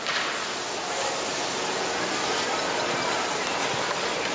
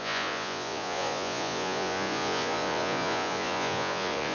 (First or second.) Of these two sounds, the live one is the first